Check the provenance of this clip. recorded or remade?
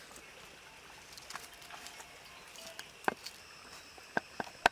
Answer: recorded